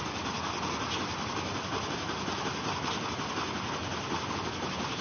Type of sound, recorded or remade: recorded